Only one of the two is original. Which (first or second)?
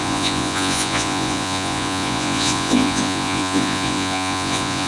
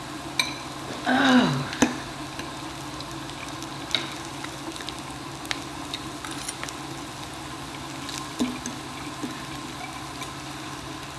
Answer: second